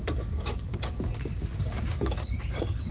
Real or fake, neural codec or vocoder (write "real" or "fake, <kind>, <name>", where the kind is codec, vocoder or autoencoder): fake, codec, DAC